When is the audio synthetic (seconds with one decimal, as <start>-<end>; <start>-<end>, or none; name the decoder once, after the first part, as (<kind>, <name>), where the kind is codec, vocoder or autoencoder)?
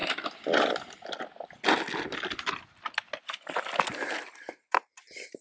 none